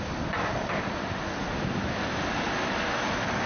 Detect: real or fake real